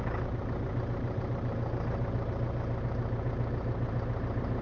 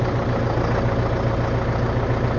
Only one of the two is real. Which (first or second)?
second